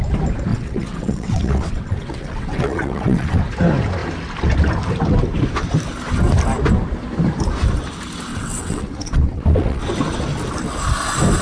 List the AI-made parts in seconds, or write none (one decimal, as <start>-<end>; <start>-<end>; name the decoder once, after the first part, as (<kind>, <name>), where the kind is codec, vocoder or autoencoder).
0.5-3.4 (vocoder, WaveNeXt); 8.3-9.8